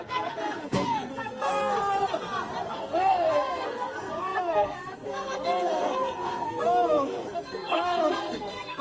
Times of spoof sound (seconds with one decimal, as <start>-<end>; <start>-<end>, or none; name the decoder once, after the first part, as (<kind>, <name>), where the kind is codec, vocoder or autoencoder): 0.0-1.6 (codec, SNAC); 2.7-8.8